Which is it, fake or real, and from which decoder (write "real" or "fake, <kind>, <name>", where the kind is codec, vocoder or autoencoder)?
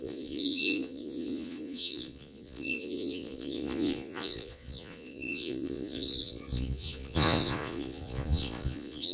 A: fake, vocoder, Vocos